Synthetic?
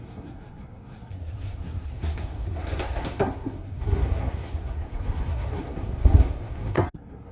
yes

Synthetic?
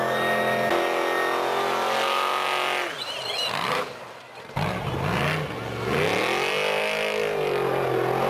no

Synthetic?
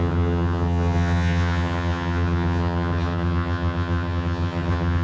yes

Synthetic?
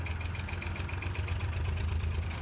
no